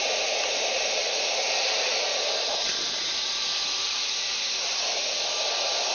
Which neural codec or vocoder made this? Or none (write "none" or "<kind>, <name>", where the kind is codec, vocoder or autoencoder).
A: vocoder, BigVGAN v2